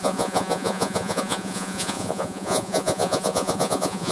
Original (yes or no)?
no